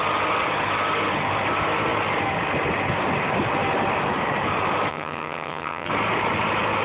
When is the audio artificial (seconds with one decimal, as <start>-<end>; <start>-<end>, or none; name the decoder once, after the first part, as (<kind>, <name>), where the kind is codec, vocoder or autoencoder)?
4.9-5.9 (vocoder, HiFi-GAN)

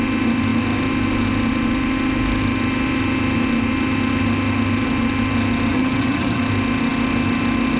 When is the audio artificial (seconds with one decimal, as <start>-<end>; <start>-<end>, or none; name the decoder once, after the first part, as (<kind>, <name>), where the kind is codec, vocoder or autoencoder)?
5.7-6.4 (vocoder, HiFi-GAN)

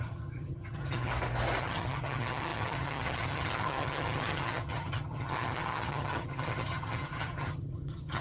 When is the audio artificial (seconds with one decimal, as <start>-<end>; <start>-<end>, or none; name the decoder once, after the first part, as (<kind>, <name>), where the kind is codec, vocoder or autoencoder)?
0.0-1.1 (vocoder, HiFi-GAN); 1.6-8.2

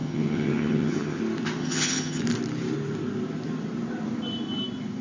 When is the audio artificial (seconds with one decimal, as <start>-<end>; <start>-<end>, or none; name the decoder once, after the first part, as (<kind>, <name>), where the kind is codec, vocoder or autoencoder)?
0.0-1.2 (vocoder, HiFi-GAN); 1.6-2.2

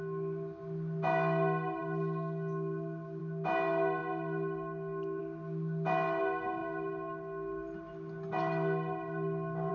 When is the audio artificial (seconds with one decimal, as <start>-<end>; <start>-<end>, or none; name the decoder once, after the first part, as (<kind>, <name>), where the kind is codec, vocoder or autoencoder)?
none

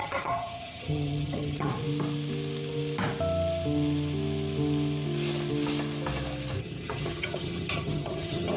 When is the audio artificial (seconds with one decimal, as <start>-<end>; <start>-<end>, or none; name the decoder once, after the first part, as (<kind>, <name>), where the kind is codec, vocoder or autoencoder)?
0.0-1.7 (vocoder, HiFi-GAN); 6.6-8.6

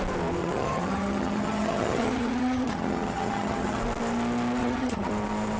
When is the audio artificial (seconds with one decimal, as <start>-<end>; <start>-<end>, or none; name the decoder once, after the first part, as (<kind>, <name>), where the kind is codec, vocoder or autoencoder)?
0.4-3.8 (vocoder, HiFi-GAN); 4.6-5.1